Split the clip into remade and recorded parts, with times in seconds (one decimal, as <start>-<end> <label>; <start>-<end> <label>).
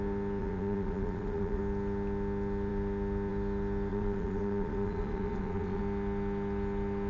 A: 0.0-0.4 recorded; 0.4-1.6 remade; 1.6-3.9 recorded; 3.9-5.8 remade; 5.8-7.1 recorded